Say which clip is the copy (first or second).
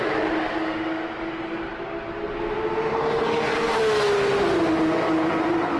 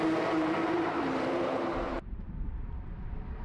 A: second